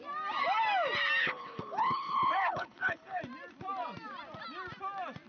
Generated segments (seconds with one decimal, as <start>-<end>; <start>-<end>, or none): 1.2-3.2